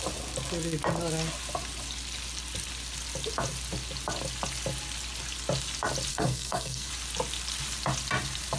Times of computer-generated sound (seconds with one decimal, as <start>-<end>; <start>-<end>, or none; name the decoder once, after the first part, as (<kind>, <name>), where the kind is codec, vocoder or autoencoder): 6.1-6.9 (codec, SNAC)